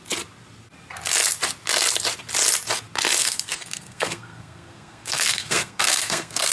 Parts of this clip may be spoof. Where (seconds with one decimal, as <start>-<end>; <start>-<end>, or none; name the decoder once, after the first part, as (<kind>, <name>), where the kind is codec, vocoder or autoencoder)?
3.2-6.5 (codec, SNAC)